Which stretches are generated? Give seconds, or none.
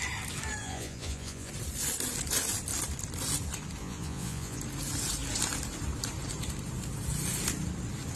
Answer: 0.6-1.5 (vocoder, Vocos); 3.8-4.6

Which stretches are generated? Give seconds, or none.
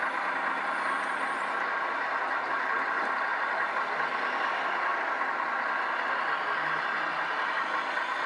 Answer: none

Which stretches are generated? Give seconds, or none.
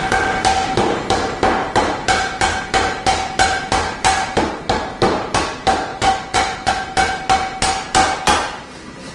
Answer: 5.9-6.7 (vocoder, Vocos)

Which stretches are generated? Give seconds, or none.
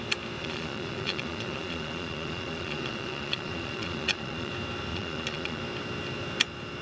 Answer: 0.4-4.5 (vocoder, Vocos); 4.9-5.6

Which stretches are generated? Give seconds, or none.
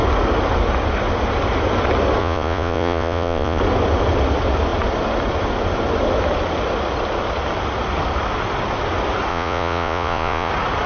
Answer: 2.2-3.6 (vocoder, Vocos); 9.3-10.5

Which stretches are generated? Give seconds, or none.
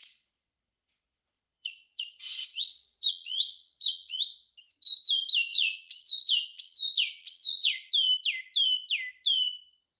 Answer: 0.0-4.2 (vocoder, Vocos); 5.5-7.9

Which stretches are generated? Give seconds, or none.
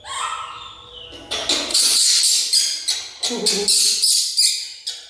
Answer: 1.7-2.2 (vocoder, Vocos)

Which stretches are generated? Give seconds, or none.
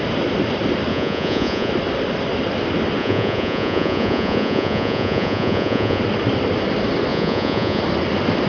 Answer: 0.9-1.7 (vocoder, Vocos); 3.0-6.0; 7.1-7.8